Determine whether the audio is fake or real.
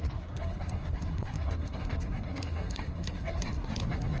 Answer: fake